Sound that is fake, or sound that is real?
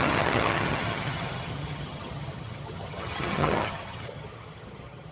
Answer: fake